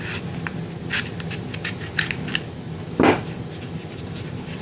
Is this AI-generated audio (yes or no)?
no